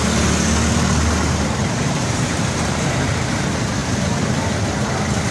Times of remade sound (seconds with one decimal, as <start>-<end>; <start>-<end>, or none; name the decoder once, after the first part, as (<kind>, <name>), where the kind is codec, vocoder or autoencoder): 1.6-3.1 (vocoder, BigVGAN v2); 3.8-4.5